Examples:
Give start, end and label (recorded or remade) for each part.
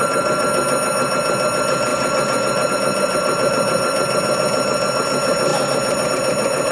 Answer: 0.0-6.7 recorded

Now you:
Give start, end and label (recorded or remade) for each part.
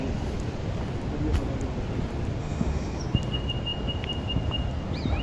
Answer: 0.0-2.4 recorded; 2.4-3.0 remade; 3.0-5.2 recorded